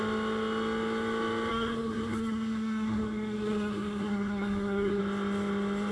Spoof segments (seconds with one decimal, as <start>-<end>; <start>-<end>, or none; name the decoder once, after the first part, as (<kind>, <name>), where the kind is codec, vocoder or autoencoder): 1.5-5.0 (codec, SNAC)